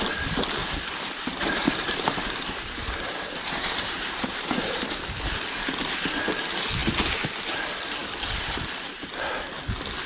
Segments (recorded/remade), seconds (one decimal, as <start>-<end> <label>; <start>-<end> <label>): 0.0-0.6 recorded; 0.6-4.9 remade; 4.9-8.0 recorded; 8.0-9.1 remade; 9.1-10.1 recorded